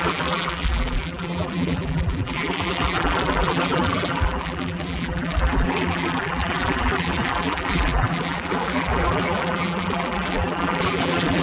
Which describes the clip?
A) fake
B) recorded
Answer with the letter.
A